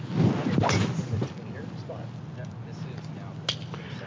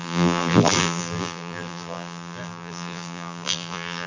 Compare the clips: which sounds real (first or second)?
first